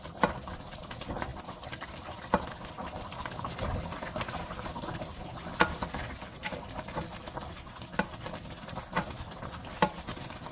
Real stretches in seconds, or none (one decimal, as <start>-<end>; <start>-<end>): 0.0-10.5